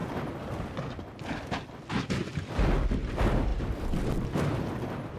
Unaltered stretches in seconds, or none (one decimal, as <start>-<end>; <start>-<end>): 0.0-5.2